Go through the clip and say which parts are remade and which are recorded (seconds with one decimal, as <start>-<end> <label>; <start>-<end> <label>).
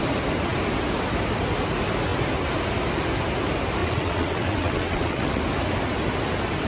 0.0-3.8 recorded; 3.8-5.4 remade; 5.4-6.7 recorded